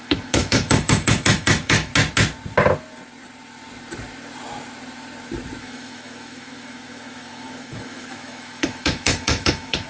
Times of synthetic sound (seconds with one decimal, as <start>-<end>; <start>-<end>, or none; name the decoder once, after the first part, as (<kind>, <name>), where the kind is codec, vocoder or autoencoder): 0.0-1.9 (autoencoder, DAC-VAE); 5.6-9.9